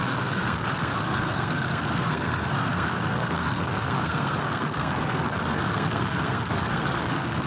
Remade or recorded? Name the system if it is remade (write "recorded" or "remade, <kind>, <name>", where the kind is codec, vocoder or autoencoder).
remade, codec, SNAC